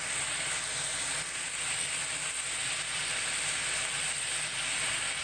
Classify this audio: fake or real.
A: real